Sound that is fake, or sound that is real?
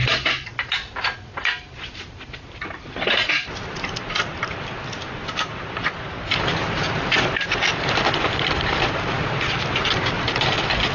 fake